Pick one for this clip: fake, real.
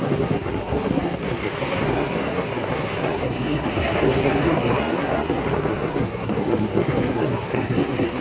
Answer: fake